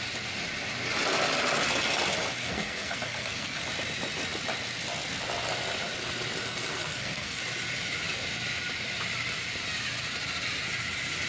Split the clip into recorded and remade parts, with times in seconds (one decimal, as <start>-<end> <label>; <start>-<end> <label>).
0.0-2.4 recorded; 2.4-3.6 remade; 3.6-6.4 recorded; 6.4-7.4 remade; 7.4-11.3 recorded